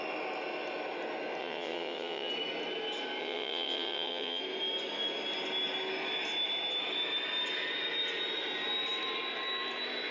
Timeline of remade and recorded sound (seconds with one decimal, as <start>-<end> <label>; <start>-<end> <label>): 0.0-1.4 recorded; 1.4-2.3 remade; 2.3-3.2 recorded; 3.2-4.4 remade; 4.4-10.1 recorded

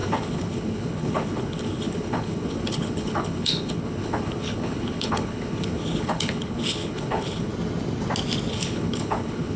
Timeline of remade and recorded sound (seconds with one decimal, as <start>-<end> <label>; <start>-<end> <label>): 0.0-7.5 remade; 7.5-8.5 recorded; 8.5-9.6 remade

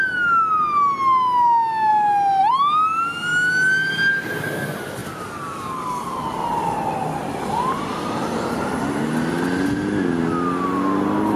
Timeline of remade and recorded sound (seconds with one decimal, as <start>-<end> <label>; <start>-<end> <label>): 0.0-11.4 recorded

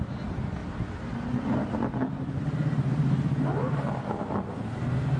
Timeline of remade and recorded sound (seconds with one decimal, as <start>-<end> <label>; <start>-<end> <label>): 0.0-5.2 recorded

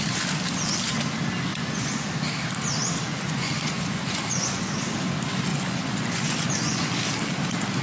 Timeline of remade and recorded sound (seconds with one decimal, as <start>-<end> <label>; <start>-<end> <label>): 0.0-1.5 recorded; 1.5-2.1 remade; 2.1-3.1 recorded; 3.1-4.7 remade; 4.7-5.5 recorded; 5.5-6.9 remade; 6.9-7.8 recorded

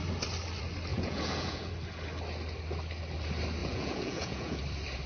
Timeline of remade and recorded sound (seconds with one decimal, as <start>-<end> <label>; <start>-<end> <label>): 0.0-0.9 recorded; 0.9-1.7 remade; 1.7-3.6 recorded; 3.6-4.6 remade; 4.6-5.1 recorded